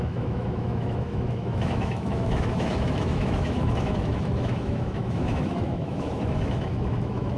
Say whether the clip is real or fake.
fake